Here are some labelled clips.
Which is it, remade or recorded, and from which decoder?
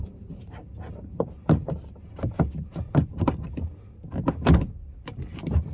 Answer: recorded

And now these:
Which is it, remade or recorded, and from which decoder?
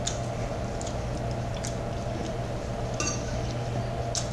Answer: recorded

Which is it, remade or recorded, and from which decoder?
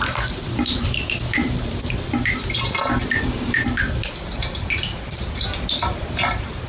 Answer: remade, vocoder, BigVGAN v2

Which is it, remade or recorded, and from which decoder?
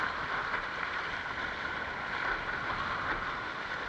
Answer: recorded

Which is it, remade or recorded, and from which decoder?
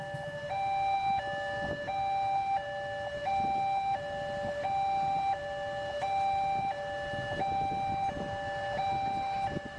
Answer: recorded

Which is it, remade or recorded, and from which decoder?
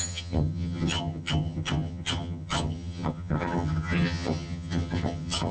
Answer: remade, vocoder, HiFi-GAN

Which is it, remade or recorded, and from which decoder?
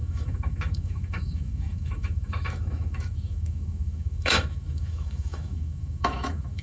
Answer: remade, autoencoder, DAC-VAE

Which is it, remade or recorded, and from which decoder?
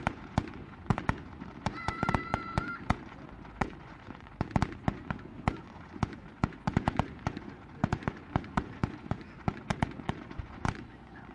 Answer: remade, vocoder, Vocos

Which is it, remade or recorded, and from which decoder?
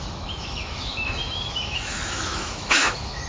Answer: remade, autoencoder, DAC-VAE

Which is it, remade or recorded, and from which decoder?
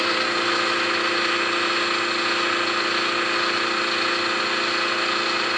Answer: recorded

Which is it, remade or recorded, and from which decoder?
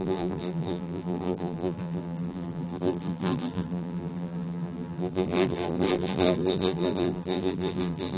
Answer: remade, vocoder, BigVGAN v2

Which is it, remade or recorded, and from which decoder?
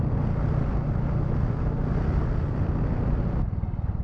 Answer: recorded